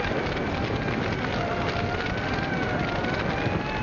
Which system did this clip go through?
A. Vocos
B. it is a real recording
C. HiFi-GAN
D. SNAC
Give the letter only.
B